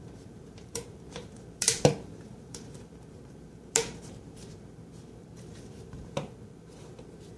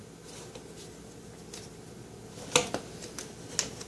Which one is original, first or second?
second